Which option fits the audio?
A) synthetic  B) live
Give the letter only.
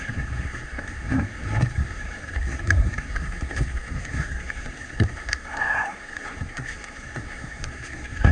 A